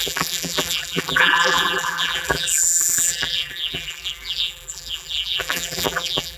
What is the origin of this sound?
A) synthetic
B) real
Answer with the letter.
A